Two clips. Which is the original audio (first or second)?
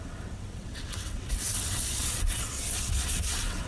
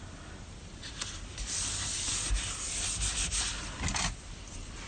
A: second